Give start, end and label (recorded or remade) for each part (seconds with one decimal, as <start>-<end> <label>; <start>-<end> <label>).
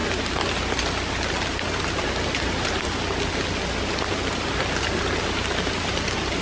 0.0-6.4 recorded